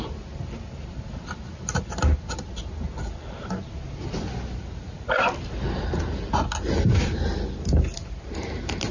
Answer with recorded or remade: recorded